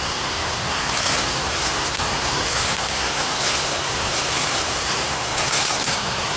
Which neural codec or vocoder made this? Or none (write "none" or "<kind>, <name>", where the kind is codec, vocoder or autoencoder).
codec, SNAC